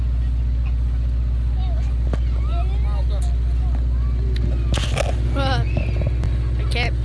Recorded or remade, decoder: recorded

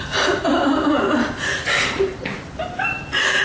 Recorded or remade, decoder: remade, vocoder, BigVGAN v2